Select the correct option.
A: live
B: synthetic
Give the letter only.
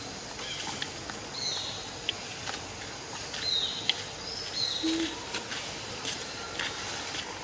A